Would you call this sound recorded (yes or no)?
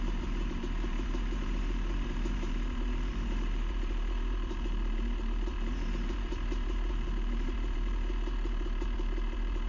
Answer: no